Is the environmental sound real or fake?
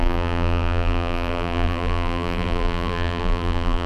fake